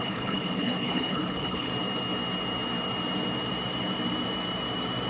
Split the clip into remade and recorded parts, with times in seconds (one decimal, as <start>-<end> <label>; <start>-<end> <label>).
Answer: 0.0-1.7 remade; 1.7-5.1 recorded